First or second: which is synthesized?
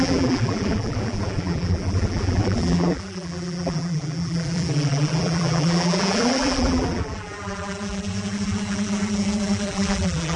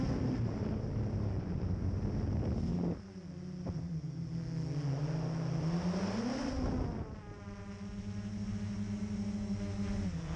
first